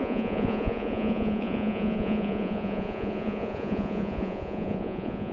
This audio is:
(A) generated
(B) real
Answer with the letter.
A